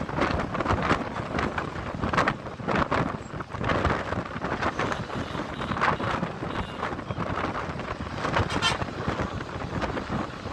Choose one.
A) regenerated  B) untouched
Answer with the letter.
B